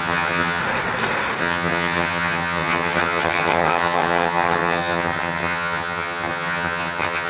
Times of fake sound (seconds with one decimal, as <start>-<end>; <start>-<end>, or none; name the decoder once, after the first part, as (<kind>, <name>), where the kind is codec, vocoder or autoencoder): 0.0-0.6 (vocoder, HiFi-GAN); 1.4-7.3